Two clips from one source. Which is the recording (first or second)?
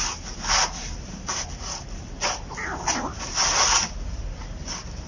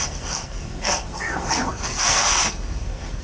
first